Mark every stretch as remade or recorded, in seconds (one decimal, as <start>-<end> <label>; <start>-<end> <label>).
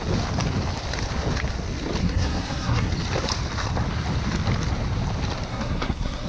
0.0-2.0 recorded; 2.0-2.9 remade; 2.9-5.5 recorded; 5.5-6.3 remade